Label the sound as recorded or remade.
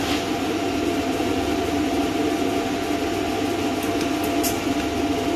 recorded